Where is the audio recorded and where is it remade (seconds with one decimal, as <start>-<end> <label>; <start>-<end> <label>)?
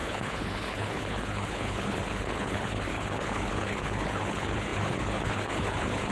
0.0-6.1 remade